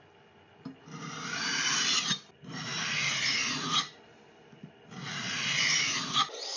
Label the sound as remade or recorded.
recorded